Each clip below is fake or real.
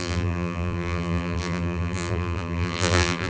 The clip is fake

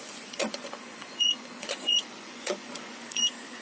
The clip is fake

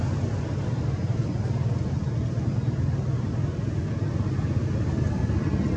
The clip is real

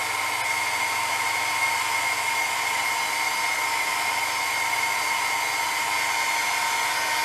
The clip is real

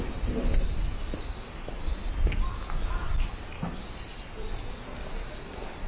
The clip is real